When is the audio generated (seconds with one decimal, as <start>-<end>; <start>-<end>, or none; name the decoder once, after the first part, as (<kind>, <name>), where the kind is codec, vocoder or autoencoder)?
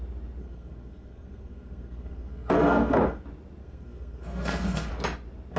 0.4-3.2 (codec, SNAC); 3.6-4.9